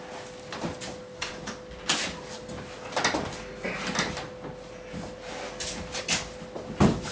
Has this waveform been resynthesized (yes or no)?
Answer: no